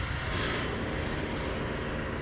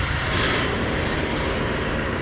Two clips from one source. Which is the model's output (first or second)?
second